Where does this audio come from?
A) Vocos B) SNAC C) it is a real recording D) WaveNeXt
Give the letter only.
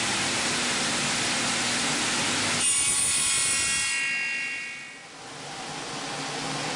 C